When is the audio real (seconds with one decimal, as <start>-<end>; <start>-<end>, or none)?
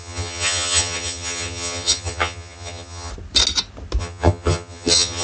3.1-4.0